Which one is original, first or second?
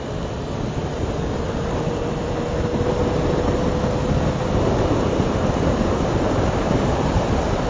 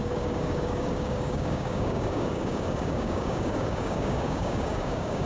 first